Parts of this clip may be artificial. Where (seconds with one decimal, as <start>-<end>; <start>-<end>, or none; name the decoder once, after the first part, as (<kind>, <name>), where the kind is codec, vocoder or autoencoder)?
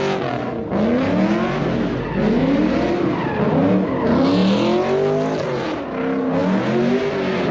none